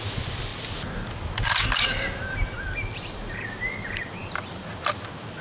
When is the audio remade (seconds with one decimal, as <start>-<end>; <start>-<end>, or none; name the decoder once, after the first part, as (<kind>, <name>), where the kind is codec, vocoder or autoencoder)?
none